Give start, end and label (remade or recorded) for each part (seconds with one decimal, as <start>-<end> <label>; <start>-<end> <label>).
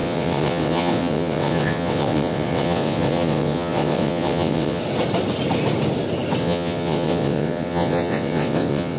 0.0-4.8 remade; 4.8-6.4 recorded; 6.4-9.0 remade